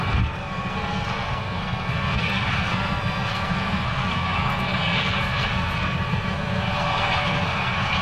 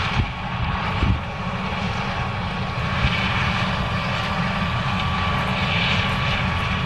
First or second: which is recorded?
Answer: second